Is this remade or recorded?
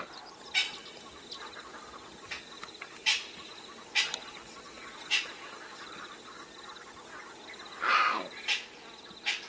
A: recorded